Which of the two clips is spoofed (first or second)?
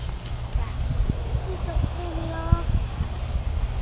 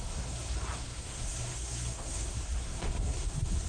second